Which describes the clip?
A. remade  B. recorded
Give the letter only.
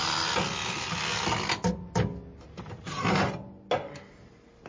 B